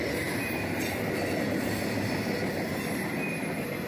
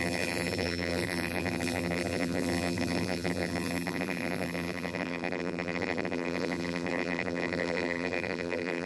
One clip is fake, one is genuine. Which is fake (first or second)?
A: second